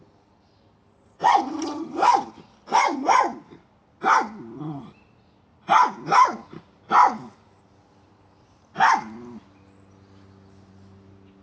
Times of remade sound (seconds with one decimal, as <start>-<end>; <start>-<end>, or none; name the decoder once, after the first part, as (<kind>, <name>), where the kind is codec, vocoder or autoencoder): none

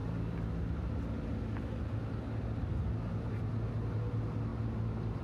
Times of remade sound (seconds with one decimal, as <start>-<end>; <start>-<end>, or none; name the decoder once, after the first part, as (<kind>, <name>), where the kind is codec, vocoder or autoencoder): none